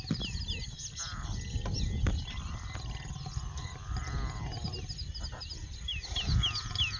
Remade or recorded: recorded